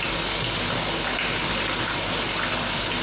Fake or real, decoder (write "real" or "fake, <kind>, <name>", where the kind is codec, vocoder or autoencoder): real